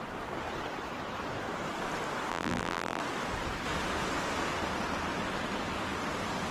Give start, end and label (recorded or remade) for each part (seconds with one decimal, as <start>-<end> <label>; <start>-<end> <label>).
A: 0.0-2.3 recorded; 2.3-3.0 remade; 3.0-6.5 recorded